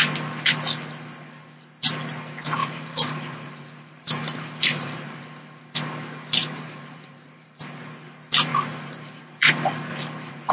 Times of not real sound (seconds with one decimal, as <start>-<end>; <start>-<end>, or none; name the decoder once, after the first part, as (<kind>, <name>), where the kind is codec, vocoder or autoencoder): 2.6-5.2 (vocoder, BigVGAN v2); 6.4-7.8; 8.5-9.2; 9.9-10.5